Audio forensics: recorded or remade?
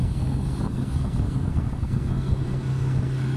remade